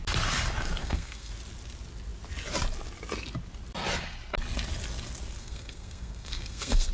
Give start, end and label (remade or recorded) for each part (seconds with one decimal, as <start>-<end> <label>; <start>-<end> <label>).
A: 0.0-0.8 recorded; 0.8-1.3 remade; 1.3-5.4 recorded; 5.4-6.9 remade